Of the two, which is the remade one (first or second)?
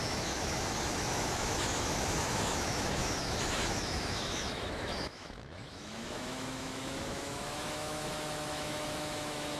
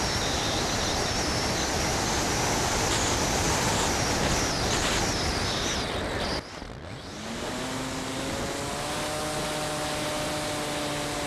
first